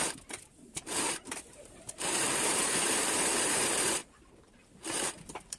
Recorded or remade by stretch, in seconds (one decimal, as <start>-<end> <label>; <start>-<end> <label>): 0.0-4.0 remade; 4.0-5.1 recorded; 5.1-5.6 remade